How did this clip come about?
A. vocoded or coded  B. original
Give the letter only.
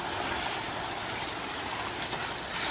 B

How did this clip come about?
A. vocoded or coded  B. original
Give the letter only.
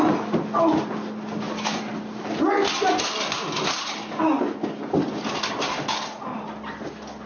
B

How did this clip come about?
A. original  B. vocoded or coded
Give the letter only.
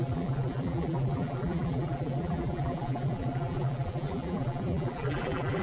B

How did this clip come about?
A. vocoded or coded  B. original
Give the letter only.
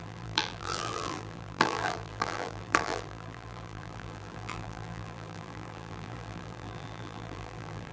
A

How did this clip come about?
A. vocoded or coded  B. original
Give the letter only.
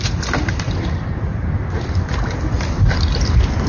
A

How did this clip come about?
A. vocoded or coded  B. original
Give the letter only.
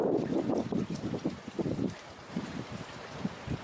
A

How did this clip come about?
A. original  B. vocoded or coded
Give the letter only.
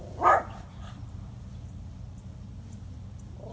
A